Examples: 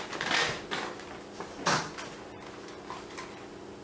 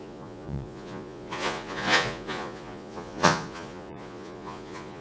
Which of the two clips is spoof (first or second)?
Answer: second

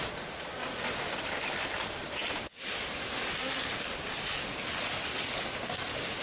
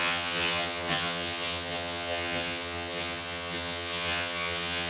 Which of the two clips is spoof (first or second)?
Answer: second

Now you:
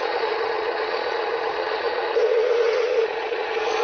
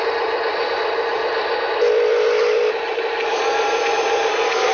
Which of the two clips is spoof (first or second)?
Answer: first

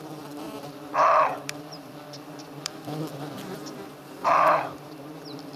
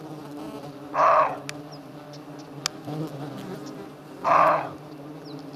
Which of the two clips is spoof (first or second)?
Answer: first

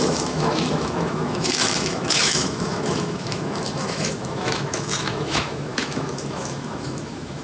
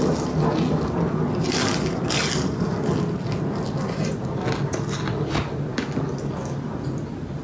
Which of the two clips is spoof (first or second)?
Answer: first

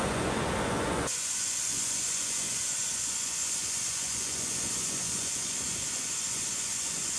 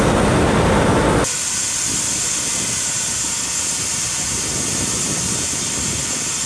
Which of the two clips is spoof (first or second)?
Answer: first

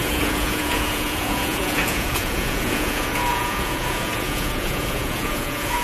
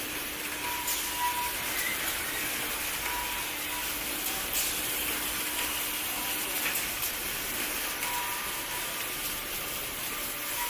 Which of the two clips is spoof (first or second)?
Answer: first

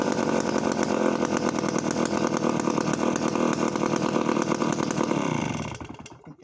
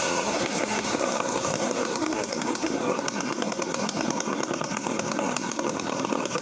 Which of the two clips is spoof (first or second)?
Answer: second